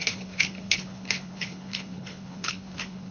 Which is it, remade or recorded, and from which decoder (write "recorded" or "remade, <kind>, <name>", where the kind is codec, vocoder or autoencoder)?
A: remade, codec, HILCodec